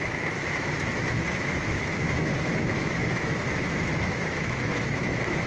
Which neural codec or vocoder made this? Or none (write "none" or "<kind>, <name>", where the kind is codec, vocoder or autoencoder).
autoencoder, DAC-VAE